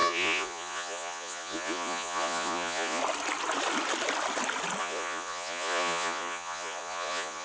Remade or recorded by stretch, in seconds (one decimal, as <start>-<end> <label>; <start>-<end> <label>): 0.0-3.0 remade; 3.0-4.8 recorded; 4.8-7.4 remade